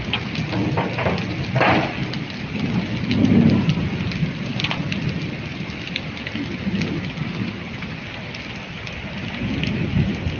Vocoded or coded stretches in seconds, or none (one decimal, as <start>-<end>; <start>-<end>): none